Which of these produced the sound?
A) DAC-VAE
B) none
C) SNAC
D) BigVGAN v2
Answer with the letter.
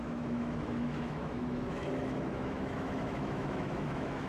A